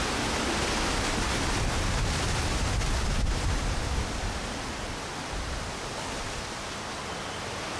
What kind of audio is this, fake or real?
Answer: real